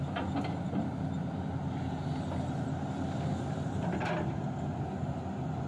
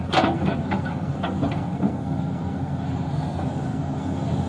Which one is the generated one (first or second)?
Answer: second